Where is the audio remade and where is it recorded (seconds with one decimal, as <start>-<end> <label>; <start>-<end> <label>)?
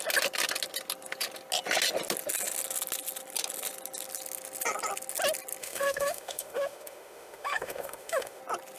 0.0-5.6 recorded; 5.6-8.4 remade; 8.4-8.8 recorded